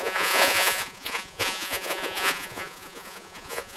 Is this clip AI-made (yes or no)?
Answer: yes